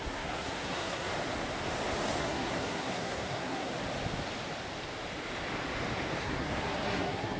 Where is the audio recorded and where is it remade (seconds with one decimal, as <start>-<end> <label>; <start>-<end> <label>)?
0.0-1.1 remade; 1.1-2.2 recorded; 2.2-3.7 remade; 3.7-6.2 recorded; 6.2-7.4 remade